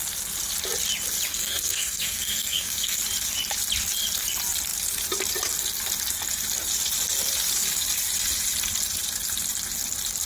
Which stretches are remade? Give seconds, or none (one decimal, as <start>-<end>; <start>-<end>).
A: 1.3-3.0